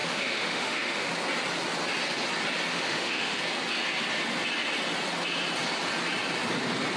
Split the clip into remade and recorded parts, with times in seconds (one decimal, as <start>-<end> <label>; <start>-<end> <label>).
0.0-1.1 remade; 1.1-2.7 recorded; 2.7-3.4 remade; 3.4-7.0 recorded